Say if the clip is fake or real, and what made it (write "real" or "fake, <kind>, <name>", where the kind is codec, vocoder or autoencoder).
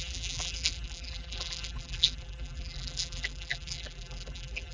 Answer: fake, vocoder, BigVGAN v2